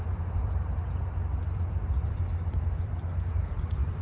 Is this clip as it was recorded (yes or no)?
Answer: no